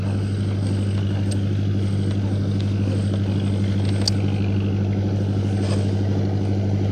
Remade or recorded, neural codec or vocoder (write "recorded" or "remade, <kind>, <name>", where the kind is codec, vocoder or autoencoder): recorded